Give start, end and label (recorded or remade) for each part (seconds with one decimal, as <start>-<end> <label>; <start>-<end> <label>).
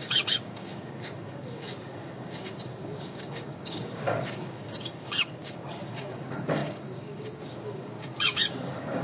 0.0-9.0 remade